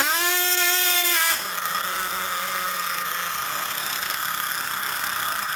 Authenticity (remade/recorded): remade